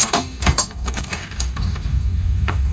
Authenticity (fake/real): fake